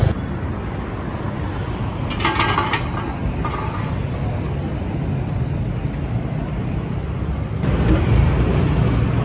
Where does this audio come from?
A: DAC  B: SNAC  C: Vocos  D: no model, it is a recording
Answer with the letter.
D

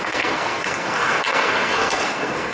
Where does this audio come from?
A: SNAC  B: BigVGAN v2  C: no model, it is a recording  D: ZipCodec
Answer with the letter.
A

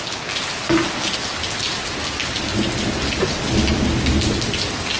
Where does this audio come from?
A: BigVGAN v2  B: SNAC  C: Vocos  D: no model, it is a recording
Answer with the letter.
D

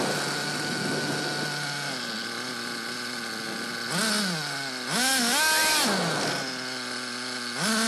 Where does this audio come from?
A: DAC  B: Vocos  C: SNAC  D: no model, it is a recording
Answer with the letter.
D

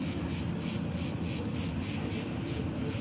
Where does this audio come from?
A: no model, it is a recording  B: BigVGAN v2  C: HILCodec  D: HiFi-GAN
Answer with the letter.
A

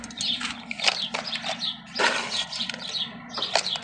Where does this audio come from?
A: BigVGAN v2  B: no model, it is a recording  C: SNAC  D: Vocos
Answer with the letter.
A